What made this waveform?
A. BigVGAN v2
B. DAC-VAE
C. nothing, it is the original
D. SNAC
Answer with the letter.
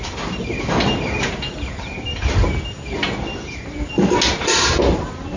C